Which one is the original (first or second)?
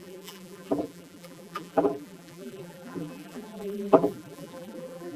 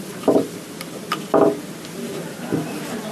second